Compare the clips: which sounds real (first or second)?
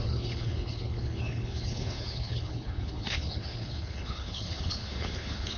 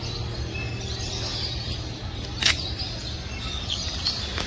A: second